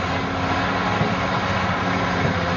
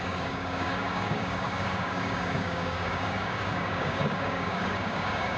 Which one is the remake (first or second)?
second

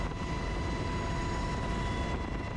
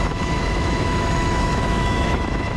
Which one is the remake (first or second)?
second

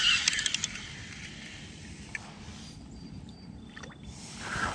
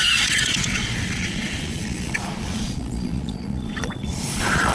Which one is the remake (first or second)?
second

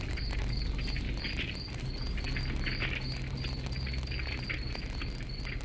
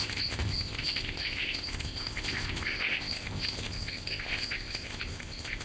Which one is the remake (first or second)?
second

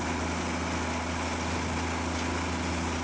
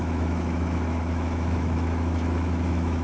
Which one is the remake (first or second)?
second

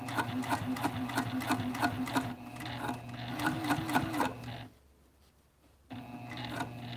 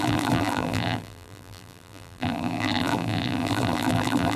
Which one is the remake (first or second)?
second